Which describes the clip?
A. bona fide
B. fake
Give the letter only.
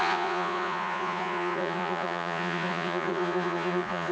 B